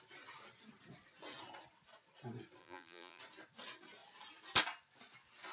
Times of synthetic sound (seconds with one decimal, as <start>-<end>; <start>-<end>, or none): 2.6-3.2